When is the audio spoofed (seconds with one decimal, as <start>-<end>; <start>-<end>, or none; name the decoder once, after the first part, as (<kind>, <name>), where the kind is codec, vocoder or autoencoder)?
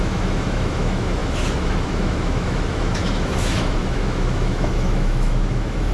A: 0.0-5.9 (autoencoder, DAC-VAE)